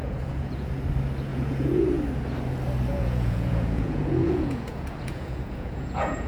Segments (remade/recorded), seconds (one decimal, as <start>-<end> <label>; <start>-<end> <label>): 0.0-0.7 remade; 0.7-1.3 recorded; 1.3-1.8 remade; 1.8-2.9 recorded; 2.9-6.3 remade